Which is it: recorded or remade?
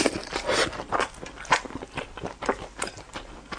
recorded